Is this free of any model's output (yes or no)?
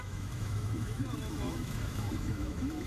no